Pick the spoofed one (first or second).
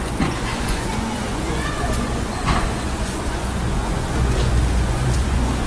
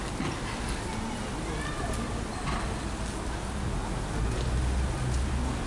first